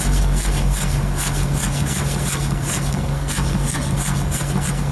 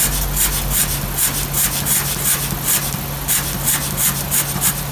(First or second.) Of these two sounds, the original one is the second